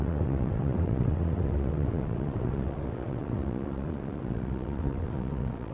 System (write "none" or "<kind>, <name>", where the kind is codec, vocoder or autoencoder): vocoder, WaveNeXt